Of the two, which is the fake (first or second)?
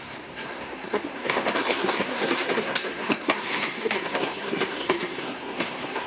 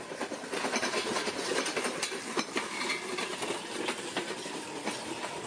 first